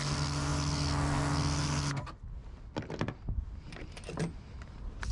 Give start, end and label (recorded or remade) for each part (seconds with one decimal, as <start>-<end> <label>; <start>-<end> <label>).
0.0-5.1 recorded